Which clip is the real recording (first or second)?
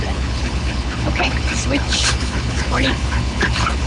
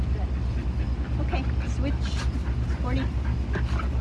second